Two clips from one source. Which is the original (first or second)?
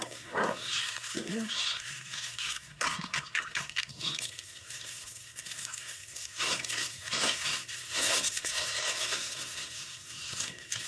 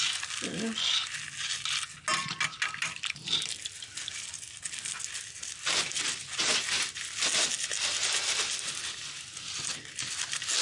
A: second